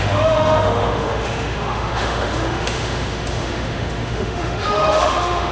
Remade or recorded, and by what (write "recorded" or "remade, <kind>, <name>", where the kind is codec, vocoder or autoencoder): remade, autoencoder, DAC-VAE